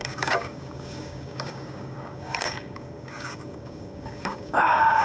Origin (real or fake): fake